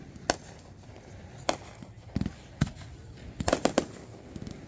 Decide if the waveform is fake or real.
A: real